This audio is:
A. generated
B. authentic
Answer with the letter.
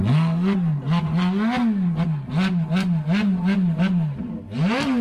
B